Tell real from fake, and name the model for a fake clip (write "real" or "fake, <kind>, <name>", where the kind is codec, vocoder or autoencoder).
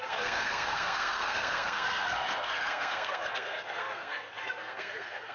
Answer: fake, codec, SNAC